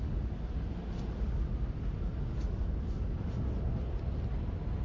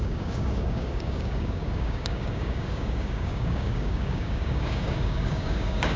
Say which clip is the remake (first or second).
second